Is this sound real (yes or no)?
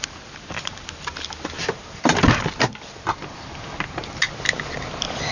yes